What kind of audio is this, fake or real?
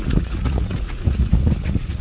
fake